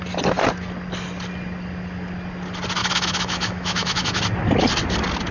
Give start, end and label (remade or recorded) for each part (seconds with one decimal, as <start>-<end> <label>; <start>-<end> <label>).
0.0-2.8 recorded; 2.8-4.2 remade; 4.2-5.3 recorded

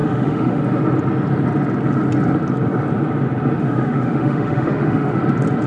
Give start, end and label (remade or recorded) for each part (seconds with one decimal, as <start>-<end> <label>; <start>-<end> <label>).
0.0-0.6 remade; 0.6-3.6 recorded; 3.6-5.2 remade; 5.2-5.7 recorded

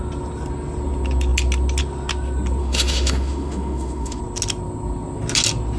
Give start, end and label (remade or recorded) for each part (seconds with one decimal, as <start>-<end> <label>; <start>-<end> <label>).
0.0-2.6 recorded; 2.6-4.2 remade; 4.2-5.8 recorded

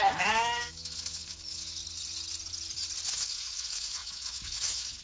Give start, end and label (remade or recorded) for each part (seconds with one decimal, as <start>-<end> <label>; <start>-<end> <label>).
0.0-1.8 remade; 1.8-3.1 recorded; 3.1-5.0 remade

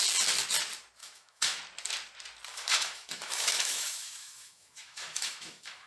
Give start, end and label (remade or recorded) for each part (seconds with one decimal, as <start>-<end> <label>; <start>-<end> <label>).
0.0-1.0 recorded; 1.0-1.6 remade; 1.6-2.5 recorded; 2.5-5.9 remade

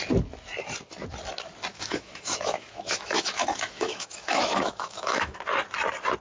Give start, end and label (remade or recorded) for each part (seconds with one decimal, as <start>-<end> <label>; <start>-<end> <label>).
0.0-1.7 recorded; 1.7-5.4 remade; 5.4-6.2 recorded